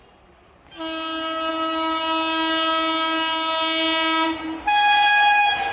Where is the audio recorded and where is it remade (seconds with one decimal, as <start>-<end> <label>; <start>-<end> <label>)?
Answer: 0.0-5.7 recorded